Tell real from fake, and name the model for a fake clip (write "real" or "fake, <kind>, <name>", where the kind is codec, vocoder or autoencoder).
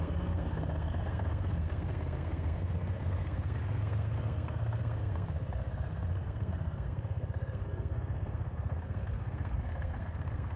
fake, codec, SNAC